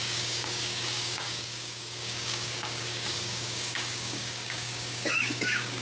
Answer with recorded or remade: remade